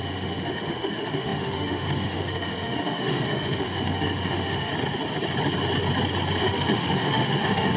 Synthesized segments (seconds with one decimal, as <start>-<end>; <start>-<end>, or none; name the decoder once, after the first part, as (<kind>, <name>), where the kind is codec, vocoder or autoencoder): 0.0-4.7 (autoencoder, DAC-VAE); 6.4-7.8